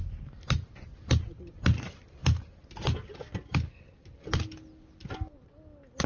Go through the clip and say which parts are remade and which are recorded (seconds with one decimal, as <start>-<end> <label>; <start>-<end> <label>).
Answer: 0.0-6.1 recorded